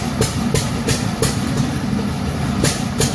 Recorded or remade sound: remade